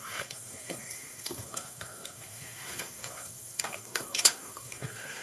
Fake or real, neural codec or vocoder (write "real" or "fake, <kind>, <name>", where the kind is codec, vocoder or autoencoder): fake, codec, SNAC